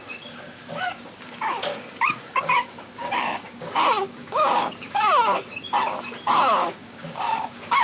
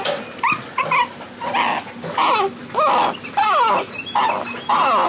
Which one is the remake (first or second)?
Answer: first